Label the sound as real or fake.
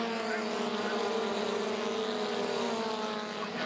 real